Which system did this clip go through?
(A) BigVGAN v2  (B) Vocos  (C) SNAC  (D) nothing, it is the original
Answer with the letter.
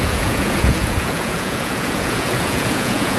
B